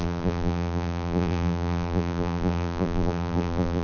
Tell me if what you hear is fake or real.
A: fake